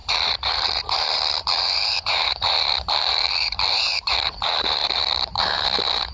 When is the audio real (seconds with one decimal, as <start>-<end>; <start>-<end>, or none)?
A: none